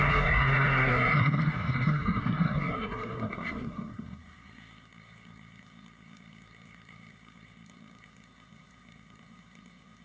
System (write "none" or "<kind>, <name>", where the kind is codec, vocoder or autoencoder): codec, SNAC